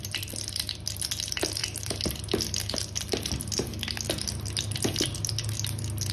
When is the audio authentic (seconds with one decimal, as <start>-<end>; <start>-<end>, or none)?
0.0-6.1